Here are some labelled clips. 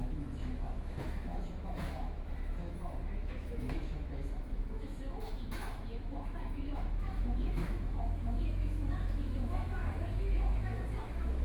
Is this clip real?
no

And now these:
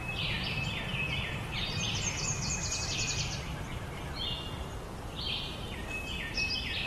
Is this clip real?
yes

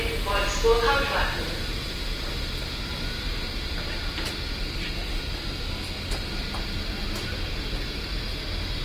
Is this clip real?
yes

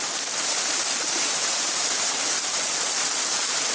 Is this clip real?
yes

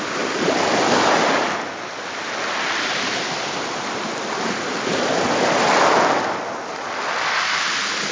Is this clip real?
yes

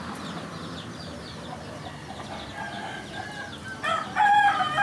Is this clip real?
yes